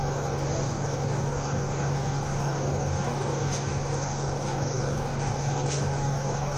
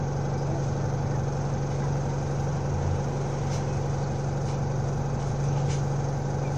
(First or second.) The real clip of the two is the second